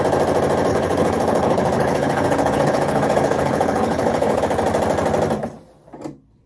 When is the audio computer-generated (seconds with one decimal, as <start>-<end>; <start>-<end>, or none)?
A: 0.7-4.4